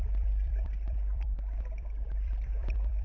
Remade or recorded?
remade